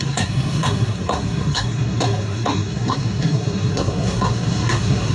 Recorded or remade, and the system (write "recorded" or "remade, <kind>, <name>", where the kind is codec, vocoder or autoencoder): remade, codec, SNAC